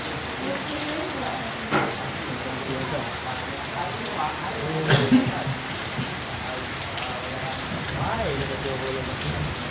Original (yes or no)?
yes